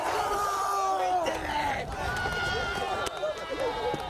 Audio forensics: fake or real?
real